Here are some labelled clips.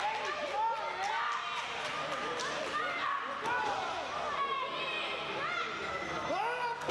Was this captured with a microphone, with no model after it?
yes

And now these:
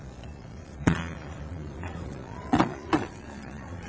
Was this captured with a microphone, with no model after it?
no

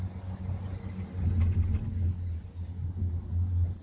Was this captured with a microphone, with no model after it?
yes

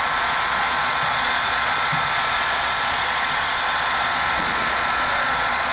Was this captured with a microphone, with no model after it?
no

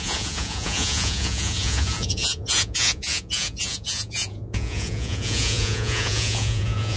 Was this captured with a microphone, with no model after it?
no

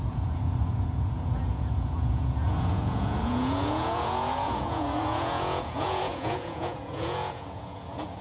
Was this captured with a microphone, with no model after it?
no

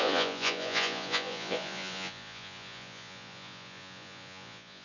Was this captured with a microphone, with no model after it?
no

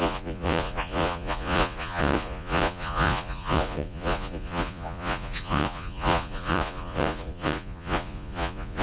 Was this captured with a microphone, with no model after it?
no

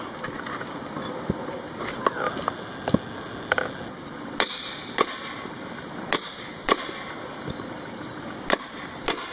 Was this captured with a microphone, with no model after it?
yes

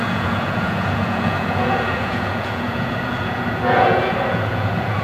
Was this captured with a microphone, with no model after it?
no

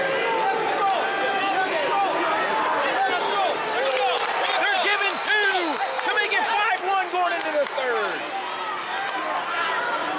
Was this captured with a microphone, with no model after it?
yes